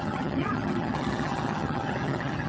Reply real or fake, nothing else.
fake